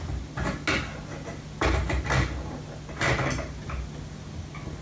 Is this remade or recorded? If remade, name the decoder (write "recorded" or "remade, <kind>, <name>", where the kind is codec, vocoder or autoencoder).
recorded